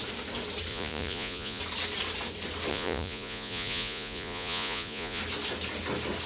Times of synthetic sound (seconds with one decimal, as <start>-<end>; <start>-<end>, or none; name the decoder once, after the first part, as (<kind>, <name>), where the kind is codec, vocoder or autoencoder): 0.7-1.6 (vocoder, Vocos); 2.7-5.2